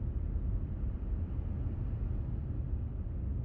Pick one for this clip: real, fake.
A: real